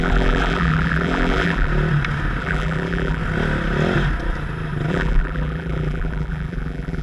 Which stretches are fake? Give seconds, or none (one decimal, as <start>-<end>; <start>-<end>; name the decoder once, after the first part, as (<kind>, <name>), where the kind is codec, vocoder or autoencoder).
0.0-1.7 (vocoder, BigVGAN v2); 2.4-3.2; 4.9-7.0